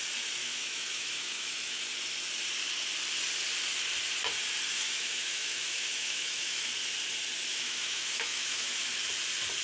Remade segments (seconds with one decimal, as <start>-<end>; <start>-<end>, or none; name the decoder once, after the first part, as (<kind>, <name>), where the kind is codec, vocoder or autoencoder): 0.4-1.8 (autoencoder, DAC-VAE); 4.7-6.7; 7.5-8.9